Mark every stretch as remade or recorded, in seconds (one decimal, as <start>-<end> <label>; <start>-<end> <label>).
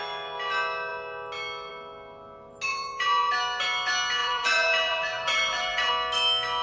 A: 0.0-2.7 recorded; 2.7-3.3 remade; 3.3-4.2 recorded; 4.2-5.9 remade; 5.9-6.6 recorded